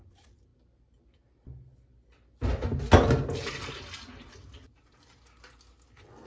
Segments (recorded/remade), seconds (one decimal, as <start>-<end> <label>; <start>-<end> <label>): 0.0-6.3 recorded